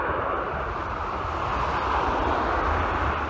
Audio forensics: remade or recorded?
recorded